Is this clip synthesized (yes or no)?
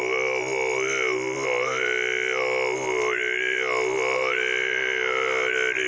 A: no